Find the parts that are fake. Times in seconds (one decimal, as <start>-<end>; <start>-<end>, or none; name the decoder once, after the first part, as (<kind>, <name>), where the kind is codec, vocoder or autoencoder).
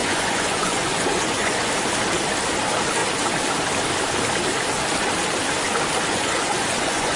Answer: 0.0-1.7 (vocoder, Vocos); 6.1-7.2